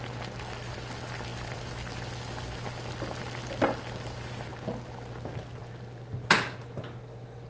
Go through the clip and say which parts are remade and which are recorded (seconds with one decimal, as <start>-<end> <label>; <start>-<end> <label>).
0.0-7.5 recorded